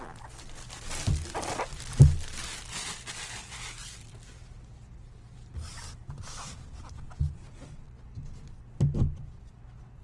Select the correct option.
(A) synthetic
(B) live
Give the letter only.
B